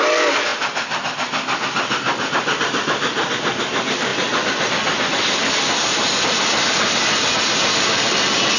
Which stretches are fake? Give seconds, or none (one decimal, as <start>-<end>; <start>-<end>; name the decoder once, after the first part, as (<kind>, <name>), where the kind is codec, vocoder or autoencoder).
none